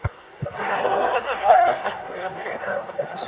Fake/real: fake